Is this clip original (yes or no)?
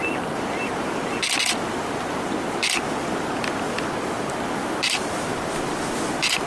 yes